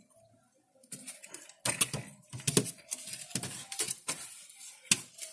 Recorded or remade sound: recorded